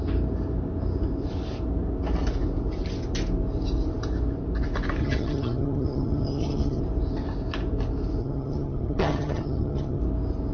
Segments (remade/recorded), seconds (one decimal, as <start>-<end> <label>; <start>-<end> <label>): 0.0-5.0 recorded; 5.0-6.8 remade; 6.8-8.2 recorded; 8.2-10.0 remade; 10.0-10.5 recorded